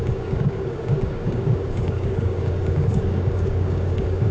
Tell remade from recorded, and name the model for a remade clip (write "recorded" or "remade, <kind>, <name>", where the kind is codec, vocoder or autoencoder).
remade, codec, DAC